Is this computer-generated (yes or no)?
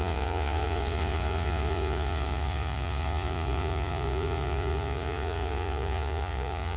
yes